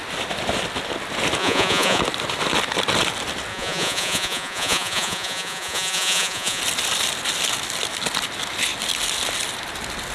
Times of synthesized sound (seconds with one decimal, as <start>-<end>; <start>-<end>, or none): 1.4-2.0; 3.5-6.6